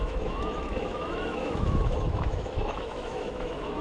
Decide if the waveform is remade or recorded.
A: remade